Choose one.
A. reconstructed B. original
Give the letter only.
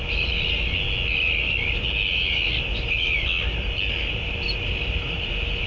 B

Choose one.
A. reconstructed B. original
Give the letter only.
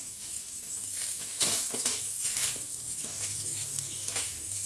A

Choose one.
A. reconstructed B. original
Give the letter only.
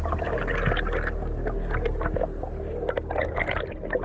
B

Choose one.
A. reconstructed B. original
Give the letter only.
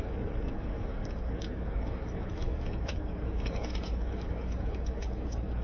A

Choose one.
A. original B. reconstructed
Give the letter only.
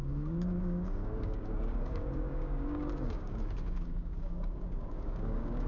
B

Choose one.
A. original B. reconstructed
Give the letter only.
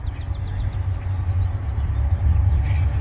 A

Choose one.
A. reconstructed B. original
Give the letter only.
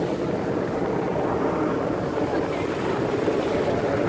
B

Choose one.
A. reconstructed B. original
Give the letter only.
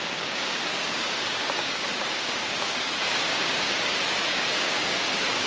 A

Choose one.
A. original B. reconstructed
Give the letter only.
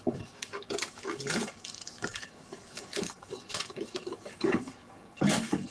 B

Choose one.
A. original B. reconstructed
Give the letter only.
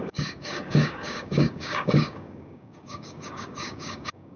B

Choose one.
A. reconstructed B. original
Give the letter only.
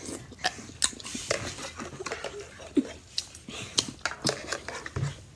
B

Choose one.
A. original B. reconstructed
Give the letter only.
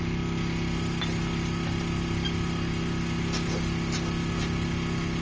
A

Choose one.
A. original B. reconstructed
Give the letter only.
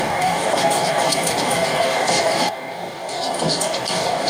B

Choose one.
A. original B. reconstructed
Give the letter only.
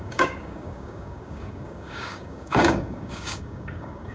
B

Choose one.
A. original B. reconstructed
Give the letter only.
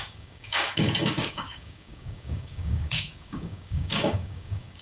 B